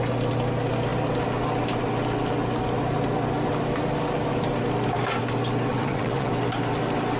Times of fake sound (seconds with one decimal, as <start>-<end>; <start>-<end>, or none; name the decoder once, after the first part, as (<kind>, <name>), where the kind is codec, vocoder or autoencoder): 5.7-6.3 (vocoder, WaveNeXt)